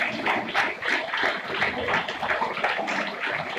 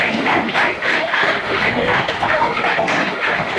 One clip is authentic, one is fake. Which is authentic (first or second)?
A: first